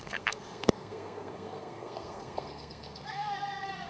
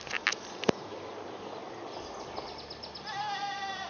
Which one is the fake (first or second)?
first